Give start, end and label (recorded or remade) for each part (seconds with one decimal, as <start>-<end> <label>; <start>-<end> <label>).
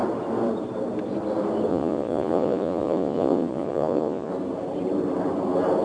0.0-1.7 recorded; 1.7-4.3 remade; 4.3-5.8 recorded